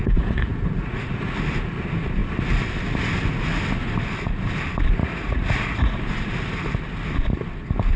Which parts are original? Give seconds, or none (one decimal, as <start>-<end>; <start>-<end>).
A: 1.1-5.0; 6.3-8.0